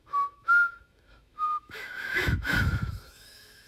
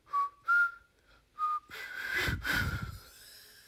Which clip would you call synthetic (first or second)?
first